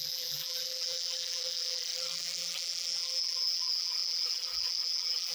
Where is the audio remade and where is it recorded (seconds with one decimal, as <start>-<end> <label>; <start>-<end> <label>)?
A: 0.0-5.3 remade